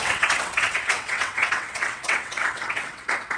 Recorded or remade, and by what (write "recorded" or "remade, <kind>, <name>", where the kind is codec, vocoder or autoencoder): remade, vocoder, WaveNeXt